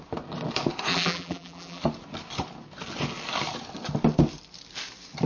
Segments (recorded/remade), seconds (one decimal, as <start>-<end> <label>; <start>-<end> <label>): 0.0-0.9 recorded; 0.9-1.8 remade; 1.8-5.3 recorded